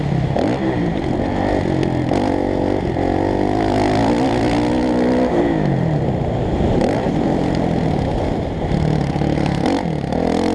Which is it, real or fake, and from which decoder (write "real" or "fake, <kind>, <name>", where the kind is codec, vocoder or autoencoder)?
real